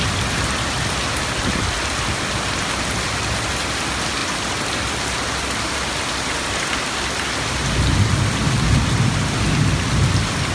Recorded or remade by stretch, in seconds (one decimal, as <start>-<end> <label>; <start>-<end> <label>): 0.0-10.5 recorded